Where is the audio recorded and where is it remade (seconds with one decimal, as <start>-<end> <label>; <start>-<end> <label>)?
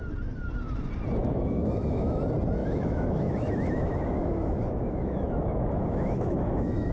0.0-1.2 recorded; 1.2-2.2 remade; 2.2-2.6 recorded; 2.6-6.9 remade